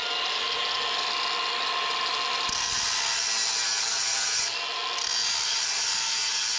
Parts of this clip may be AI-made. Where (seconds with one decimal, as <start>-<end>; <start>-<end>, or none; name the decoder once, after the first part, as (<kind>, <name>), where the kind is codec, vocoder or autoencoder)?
none